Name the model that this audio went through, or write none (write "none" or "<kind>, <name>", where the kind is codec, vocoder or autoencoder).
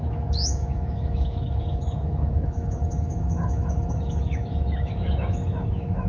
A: autoencoder, DAC-VAE